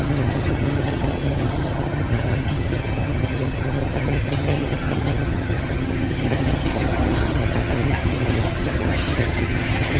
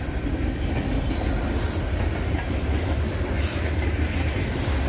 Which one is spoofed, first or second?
first